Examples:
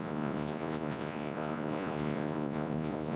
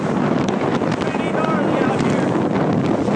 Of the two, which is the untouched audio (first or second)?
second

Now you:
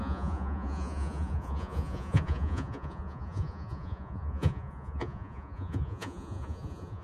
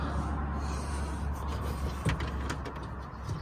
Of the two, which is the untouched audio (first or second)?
second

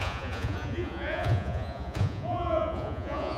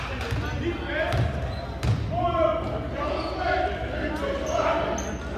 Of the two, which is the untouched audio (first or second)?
second